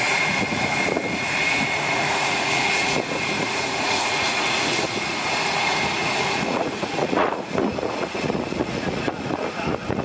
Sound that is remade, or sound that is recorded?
remade